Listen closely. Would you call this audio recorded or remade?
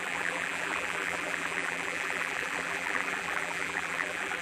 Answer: remade